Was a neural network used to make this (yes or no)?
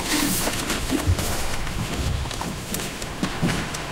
yes